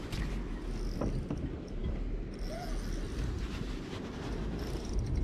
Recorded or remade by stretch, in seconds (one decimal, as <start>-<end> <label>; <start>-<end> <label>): 0.0-5.2 recorded